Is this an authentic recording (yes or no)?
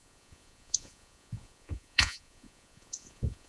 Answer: no